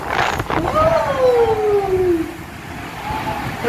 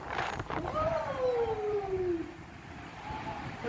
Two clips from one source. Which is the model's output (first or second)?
second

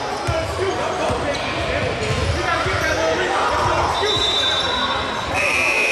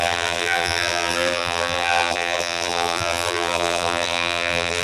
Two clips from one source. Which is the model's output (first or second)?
second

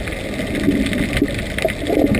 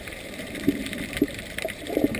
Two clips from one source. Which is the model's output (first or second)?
second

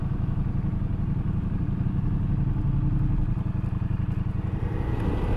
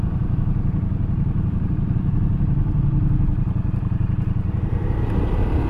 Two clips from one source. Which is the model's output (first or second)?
second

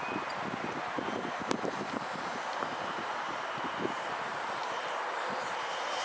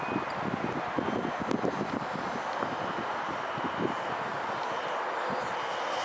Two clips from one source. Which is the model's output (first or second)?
first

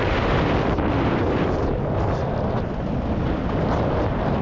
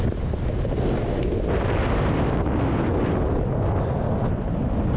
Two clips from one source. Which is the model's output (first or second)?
first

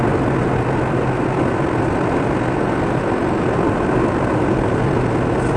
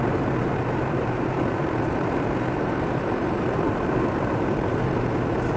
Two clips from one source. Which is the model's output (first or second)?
second